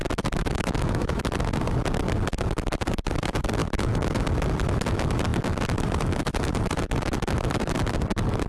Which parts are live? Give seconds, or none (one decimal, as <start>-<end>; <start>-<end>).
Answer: 0.0-0.4; 1.2-3.6; 4.2-8.5